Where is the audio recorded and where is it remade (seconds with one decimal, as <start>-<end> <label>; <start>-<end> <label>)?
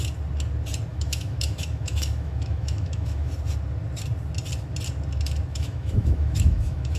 0.0-0.9 recorded; 0.9-3.3 remade; 3.3-5.5 recorded; 5.5-7.0 remade